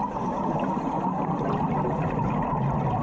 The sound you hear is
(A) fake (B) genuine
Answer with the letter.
B